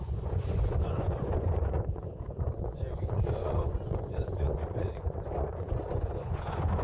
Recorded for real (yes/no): no